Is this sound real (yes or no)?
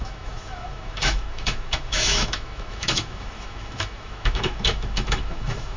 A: no